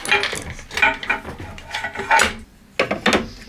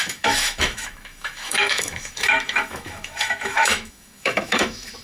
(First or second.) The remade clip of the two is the second